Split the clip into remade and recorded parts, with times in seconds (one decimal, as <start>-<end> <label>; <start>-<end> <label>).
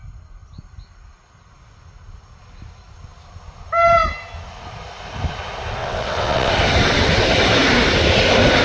0.0-5.8 recorded; 5.8-6.5 remade; 6.5-8.6 recorded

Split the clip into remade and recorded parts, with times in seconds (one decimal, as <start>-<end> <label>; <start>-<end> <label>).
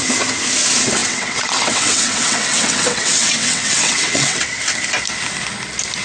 0.0-1.0 recorded; 1.0-4.6 remade; 4.6-6.0 recorded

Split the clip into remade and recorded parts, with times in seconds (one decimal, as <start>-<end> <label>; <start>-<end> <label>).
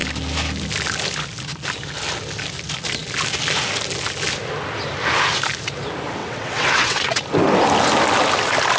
0.0-6.2 recorded; 6.2-7.2 remade; 7.2-8.8 recorded